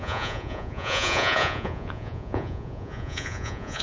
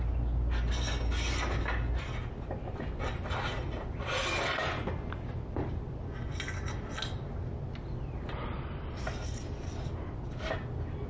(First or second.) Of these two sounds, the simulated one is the first